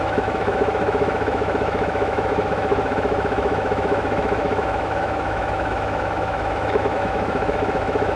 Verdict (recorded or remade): remade